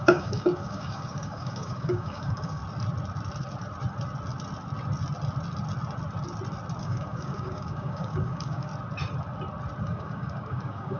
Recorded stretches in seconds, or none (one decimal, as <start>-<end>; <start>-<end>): 2.6-6.8; 8.7-9.8